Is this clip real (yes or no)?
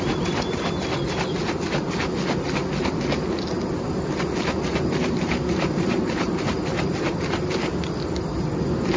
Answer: yes